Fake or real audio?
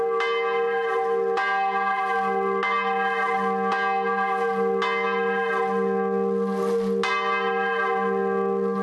real